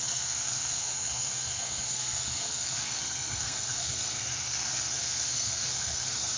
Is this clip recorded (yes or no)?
no